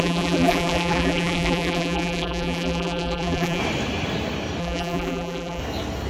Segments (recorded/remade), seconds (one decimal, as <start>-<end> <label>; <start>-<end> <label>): 0.0-3.6 remade; 3.6-4.6 recorded; 4.6-5.6 remade; 5.6-6.1 recorded